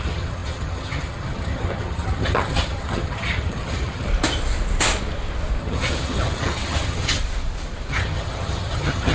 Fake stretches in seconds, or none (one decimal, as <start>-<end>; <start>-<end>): 0.0-4.1; 5.6-7.2; 7.9-9.1